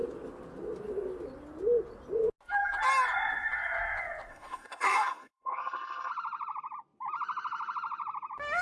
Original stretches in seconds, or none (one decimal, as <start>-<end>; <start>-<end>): 0.0-4.3; 6.1-8.6